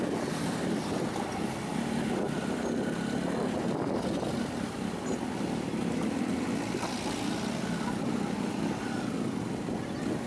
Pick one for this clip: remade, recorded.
recorded